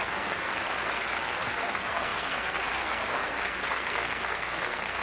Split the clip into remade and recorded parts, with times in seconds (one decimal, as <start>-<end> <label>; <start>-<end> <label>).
0.0-5.0 remade